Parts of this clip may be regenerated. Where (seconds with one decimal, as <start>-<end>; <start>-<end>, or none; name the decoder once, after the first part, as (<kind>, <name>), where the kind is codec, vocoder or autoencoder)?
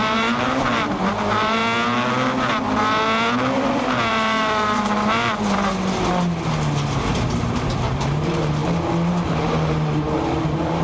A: 0.0-1.6 (vocoder, BigVGAN v2); 4.1-5.7; 7.4-8.6; 9.1-10.8